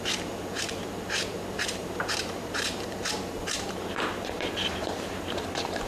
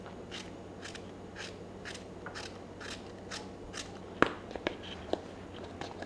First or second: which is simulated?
first